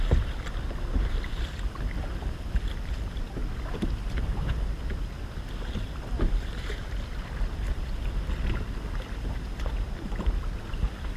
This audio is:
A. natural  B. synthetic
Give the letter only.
B